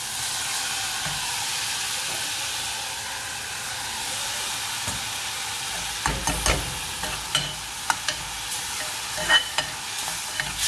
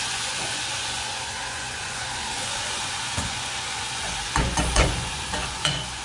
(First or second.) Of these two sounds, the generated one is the second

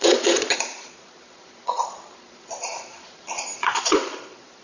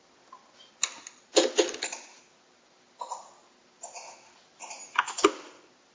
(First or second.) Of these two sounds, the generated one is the first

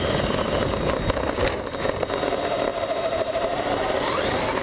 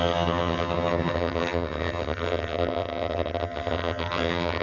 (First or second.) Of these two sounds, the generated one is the second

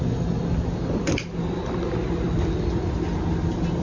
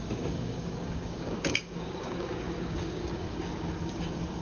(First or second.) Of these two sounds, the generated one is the second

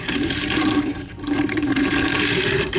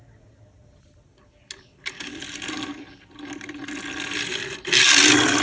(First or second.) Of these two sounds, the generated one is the first